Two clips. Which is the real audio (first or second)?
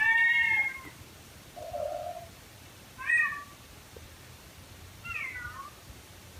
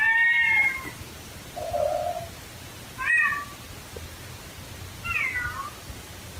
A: second